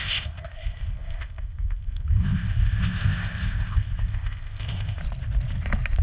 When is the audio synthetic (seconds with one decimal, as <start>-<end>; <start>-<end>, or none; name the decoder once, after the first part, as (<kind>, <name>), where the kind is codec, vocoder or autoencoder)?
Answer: 0.0-5.0 (codec, ZipCodec)